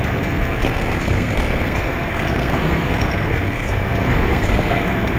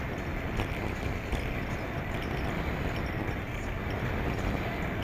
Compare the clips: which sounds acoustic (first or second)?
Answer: second